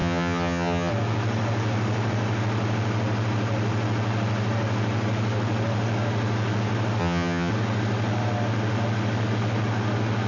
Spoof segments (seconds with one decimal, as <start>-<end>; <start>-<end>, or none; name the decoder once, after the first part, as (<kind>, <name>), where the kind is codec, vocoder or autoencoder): 0.0-0.9 (vocoder, HiFi-GAN); 7.0-7.5